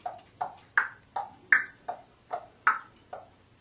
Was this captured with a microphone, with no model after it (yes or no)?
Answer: yes